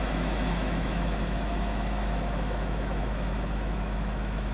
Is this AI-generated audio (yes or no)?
yes